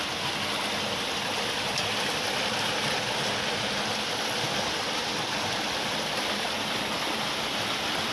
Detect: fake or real real